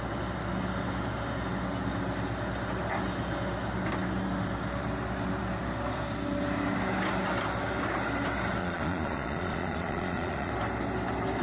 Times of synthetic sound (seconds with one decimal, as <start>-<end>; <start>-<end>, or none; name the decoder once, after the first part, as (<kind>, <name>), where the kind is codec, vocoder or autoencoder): 8.6-10.5 (vocoder, Vocos)